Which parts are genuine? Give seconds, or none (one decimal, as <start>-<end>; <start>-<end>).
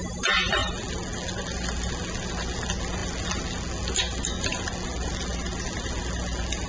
0.0-6.7